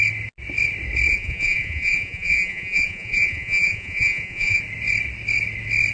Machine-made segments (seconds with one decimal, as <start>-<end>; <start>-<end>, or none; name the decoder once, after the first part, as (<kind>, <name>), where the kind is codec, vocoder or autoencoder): 1.1-4.6 (vocoder, Vocos)